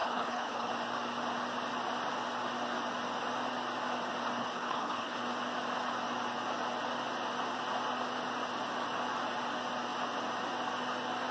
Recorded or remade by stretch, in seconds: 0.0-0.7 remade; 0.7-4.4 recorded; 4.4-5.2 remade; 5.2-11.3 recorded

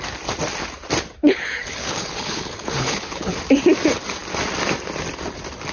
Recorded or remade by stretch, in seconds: 0.0-1.2 recorded; 1.2-3.4 remade; 3.4-5.7 recorded

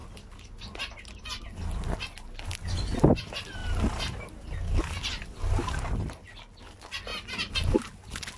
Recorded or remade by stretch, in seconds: 0.0-8.4 recorded

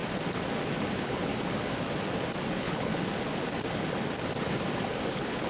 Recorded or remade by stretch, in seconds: 0.0-0.9 recorded; 0.9-1.3 remade; 1.3-2.5 recorded; 2.5-2.9 remade; 2.9-5.1 recorded; 5.1-5.5 remade

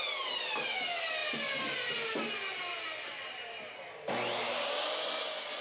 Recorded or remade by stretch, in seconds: 0.0-5.6 recorded

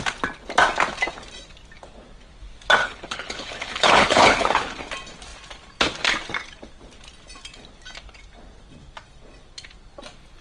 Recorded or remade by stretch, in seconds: 0.0-2.8 recorded; 2.8-4.8 remade; 4.8-10.4 recorded

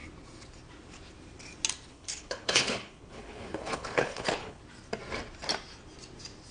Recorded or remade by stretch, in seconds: 0.0-1.9 recorded; 1.9-4.6 remade; 4.6-6.5 recorded